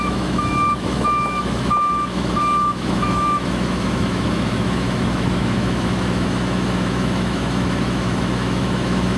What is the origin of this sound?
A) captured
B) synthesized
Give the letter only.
B